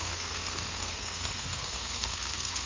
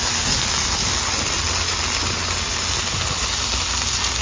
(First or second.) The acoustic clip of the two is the second